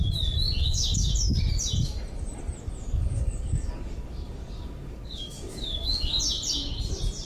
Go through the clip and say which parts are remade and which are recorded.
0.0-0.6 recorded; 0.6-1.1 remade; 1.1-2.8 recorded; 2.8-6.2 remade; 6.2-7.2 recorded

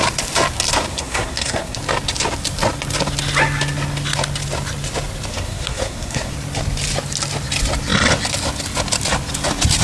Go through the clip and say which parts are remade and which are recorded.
0.0-0.9 recorded; 0.9-1.8 remade; 1.8-5.3 recorded; 5.3-6.3 remade; 6.3-9.8 recorded

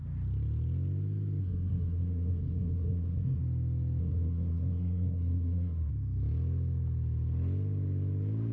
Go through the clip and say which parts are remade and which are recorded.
0.0-1.4 recorded; 1.4-3.4 remade; 3.4-4.0 recorded; 4.0-5.9 remade; 5.9-8.5 recorded

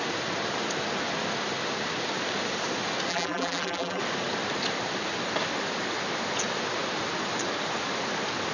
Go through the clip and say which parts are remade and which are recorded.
0.0-3.1 recorded; 3.1-4.0 remade; 4.0-8.5 recorded

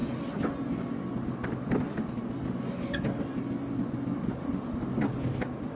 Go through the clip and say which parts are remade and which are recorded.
0.0-5.7 recorded